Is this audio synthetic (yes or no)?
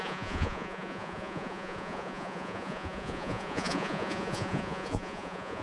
yes